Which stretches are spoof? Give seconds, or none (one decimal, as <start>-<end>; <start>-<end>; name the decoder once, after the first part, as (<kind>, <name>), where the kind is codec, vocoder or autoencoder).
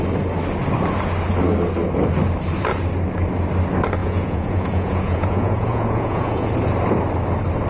4.0-6.5 (vocoder, Vocos)